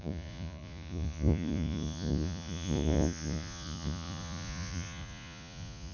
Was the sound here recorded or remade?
remade